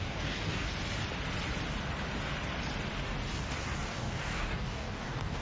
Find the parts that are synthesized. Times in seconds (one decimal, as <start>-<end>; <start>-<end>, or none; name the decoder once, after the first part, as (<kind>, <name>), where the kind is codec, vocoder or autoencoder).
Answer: 0.0-0.7 (codec, DAC); 3.9-5.4